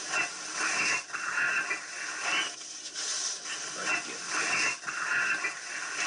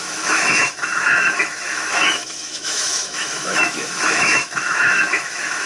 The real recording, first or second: first